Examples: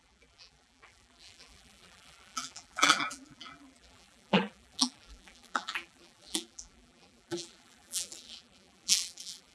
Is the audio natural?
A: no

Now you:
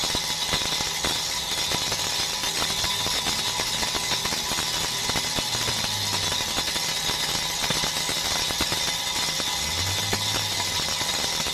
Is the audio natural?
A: yes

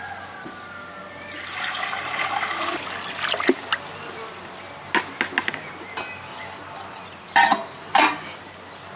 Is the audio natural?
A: yes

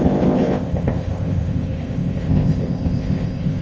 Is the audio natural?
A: no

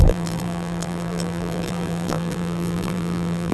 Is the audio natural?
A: no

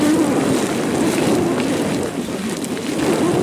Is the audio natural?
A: yes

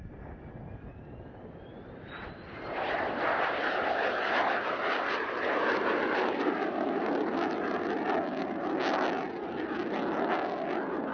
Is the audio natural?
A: yes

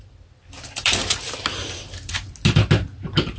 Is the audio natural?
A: yes